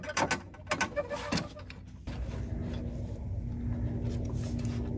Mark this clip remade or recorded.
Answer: recorded